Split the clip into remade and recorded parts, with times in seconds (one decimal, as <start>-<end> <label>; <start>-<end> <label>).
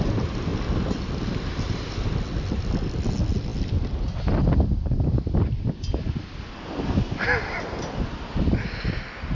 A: 0.0-9.3 recorded